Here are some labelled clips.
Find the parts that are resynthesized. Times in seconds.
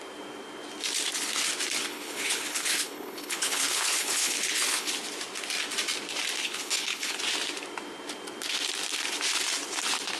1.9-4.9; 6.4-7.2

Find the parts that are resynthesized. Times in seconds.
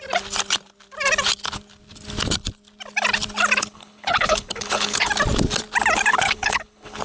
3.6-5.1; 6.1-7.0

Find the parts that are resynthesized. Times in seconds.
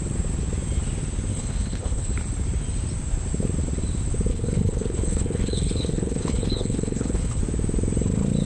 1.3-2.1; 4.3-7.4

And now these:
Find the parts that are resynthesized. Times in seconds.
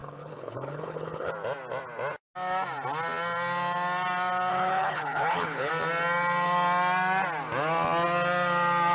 0.0-1.3; 4.5-5.7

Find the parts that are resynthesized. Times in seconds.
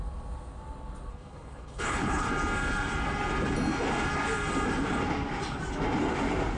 1.1-2.3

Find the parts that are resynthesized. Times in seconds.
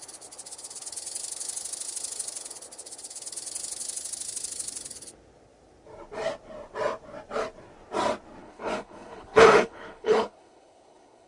8.4-11.3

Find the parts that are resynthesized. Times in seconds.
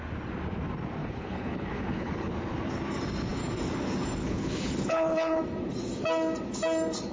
1.0-2.3; 4.2-5.4